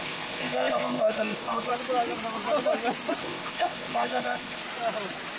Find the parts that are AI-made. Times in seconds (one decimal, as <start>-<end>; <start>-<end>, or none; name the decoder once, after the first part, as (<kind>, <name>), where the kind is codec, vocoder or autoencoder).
0.0-1.7 (codec, ZipCodec); 3.2-4.6